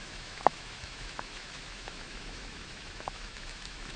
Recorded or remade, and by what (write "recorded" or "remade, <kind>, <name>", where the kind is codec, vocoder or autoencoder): remade, autoencoder, DAC-VAE